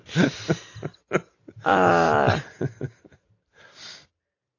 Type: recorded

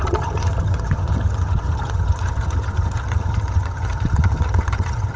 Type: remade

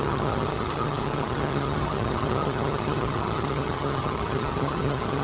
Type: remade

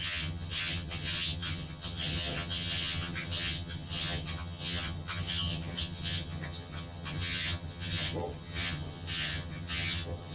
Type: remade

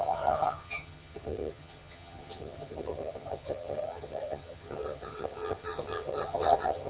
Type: remade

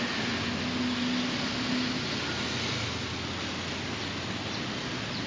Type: recorded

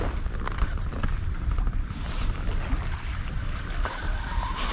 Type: recorded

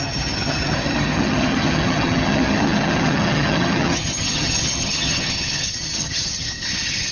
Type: remade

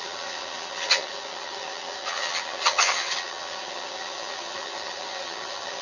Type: remade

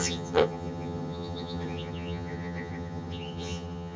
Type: remade